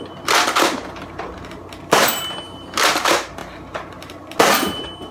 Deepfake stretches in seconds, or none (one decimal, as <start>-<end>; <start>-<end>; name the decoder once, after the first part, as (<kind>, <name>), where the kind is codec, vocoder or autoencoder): none